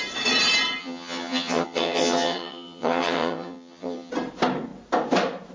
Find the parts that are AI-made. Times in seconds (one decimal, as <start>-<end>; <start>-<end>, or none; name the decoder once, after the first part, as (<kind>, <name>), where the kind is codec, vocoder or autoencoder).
0.8-4.1 (vocoder, HiFi-GAN)

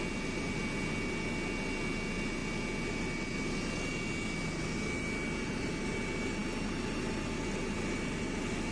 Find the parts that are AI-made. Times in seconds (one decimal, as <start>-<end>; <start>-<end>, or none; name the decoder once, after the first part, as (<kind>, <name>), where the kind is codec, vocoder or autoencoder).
none

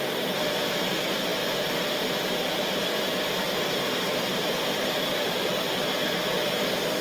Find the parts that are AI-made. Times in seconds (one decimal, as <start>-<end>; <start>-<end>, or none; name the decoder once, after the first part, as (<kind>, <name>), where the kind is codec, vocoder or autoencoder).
0.0-5.5 (vocoder, BigVGAN v2); 6.1-7.0

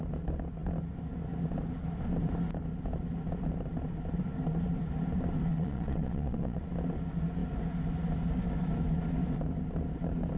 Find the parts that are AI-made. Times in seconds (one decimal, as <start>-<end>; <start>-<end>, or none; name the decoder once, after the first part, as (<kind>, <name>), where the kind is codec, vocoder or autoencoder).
5.5-6.6 (vocoder, Vocos)

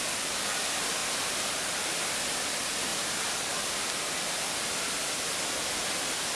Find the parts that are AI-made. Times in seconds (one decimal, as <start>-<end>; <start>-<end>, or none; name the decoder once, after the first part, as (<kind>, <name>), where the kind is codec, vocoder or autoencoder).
none

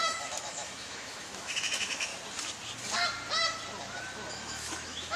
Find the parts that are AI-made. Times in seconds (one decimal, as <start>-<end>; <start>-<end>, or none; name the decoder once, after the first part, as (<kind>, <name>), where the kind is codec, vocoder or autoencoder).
0.0-2.1 (autoencoder, DAC-VAE); 4.3-5.2

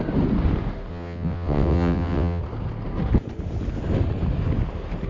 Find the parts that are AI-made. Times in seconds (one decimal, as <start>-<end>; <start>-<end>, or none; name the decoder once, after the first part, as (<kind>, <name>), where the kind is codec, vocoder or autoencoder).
0.9-2.4 (vocoder, WaveNeXt)

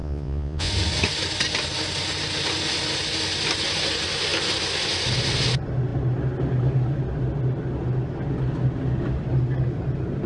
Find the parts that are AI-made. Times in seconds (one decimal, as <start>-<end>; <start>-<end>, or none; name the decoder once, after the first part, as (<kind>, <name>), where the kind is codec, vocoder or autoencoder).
0.0-0.7 (vocoder, Vocos)